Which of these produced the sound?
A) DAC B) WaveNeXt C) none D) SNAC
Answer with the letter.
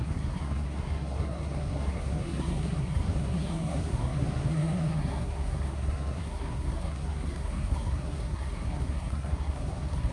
D